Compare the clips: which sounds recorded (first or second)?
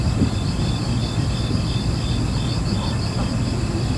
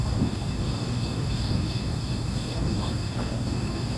first